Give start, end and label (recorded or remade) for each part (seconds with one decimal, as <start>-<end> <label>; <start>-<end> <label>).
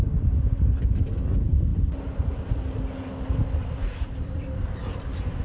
0.0-1.7 recorded; 1.7-4.9 remade; 4.9-5.4 recorded